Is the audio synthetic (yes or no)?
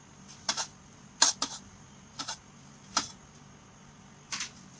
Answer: yes